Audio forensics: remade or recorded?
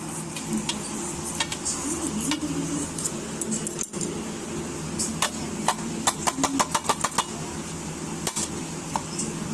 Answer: recorded